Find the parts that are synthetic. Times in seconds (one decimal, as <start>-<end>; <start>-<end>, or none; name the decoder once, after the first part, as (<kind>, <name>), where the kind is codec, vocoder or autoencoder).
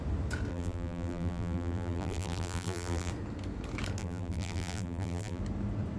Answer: 0.5-3.1 (vocoder, BigVGAN v2); 4.0-5.4